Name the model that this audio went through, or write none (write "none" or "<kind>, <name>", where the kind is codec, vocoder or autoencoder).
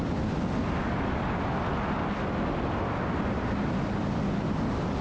none